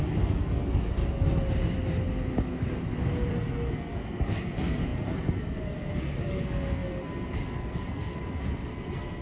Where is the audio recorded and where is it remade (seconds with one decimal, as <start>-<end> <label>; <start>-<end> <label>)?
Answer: 0.0-1.0 remade; 1.0-3.3 recorded; 3.3-9.2 remade